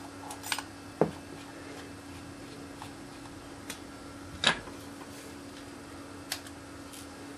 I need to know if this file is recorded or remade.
recorded